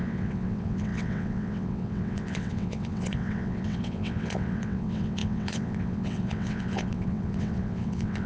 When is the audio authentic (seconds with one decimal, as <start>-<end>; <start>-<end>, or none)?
none